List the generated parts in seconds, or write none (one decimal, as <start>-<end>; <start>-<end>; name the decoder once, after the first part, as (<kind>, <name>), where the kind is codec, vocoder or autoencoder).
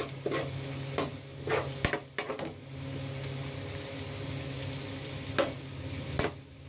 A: none